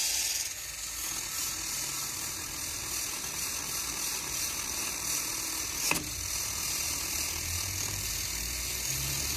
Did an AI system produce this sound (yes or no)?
no